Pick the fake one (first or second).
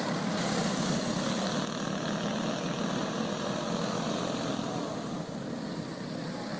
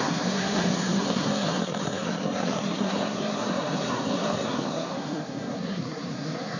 second